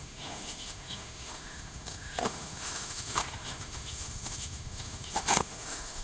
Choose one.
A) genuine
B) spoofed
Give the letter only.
B